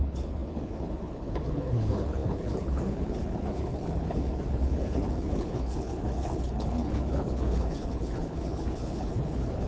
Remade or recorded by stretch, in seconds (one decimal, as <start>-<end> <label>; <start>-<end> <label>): 0.0-9.7 remade